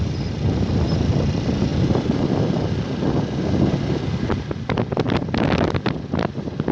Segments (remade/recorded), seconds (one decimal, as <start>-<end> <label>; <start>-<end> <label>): 0.0-6.7 recorded